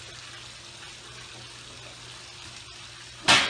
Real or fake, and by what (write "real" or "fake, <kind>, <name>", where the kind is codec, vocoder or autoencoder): real